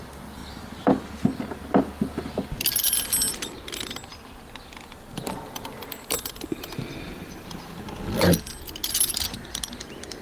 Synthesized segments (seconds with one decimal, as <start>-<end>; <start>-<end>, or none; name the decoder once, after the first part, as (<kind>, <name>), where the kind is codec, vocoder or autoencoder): none

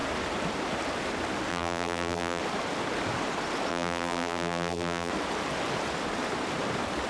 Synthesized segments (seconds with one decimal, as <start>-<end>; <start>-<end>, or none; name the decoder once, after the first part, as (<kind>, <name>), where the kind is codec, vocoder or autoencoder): 1.5-2.4 (vocoder, BigVGAN v2); 3.7-5.1